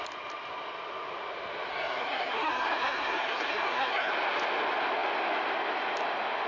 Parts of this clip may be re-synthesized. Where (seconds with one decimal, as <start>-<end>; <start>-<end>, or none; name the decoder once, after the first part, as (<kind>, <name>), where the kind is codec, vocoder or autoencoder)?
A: 1.7-4.1 (codec, SNAC)